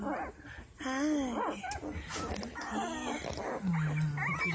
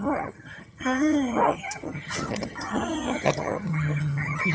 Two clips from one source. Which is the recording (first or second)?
first